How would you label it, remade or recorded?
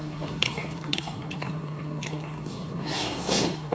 remade